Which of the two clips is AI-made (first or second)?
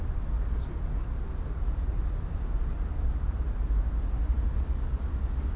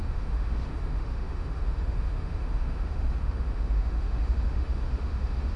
second